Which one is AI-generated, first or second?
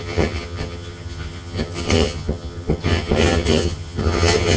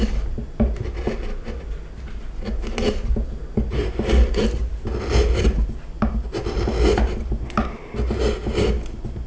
first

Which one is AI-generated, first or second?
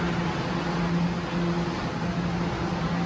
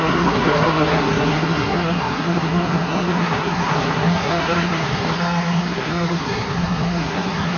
second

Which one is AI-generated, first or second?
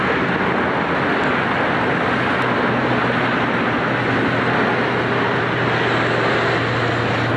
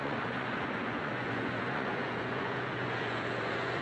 second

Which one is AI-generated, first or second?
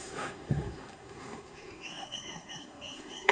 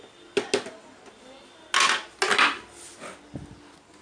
first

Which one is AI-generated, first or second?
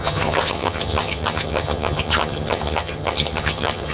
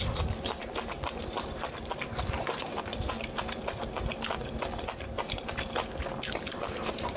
first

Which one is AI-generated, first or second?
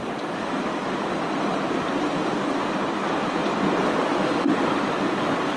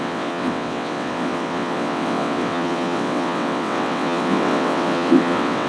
second